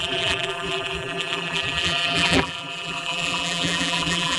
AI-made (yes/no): yes